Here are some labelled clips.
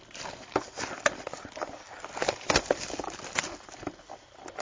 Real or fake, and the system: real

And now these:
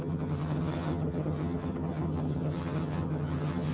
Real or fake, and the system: fake, vocoder, HiFi-GAN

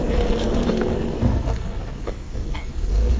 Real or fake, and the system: fake, codec, SNAC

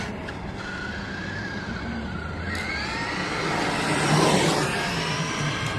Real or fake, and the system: real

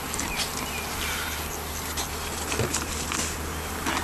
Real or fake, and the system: real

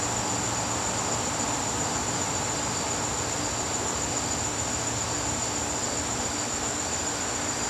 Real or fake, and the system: real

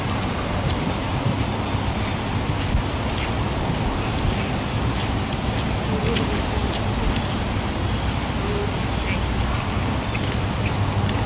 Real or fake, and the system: real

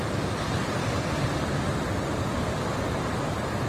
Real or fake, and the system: real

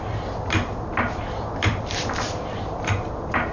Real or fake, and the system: fake, vocoder, BigVGAN v2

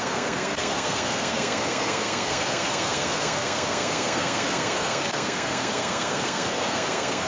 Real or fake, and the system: fake, codec, SNAC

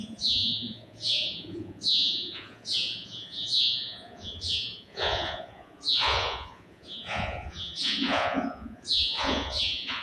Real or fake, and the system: fake, vocoder, Vocos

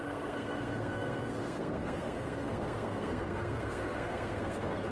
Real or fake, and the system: fake, codec, SNAC